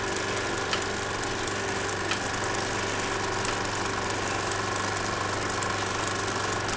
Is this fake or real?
real